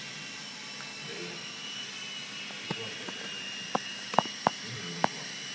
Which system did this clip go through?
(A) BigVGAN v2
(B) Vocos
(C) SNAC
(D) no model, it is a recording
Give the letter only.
A